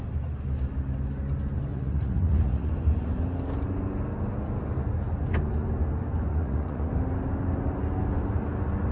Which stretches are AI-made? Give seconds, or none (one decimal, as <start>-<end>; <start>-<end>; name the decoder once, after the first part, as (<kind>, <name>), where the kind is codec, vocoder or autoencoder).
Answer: 1.7-2.7 (vocoder, Vocos); 6.3-6.9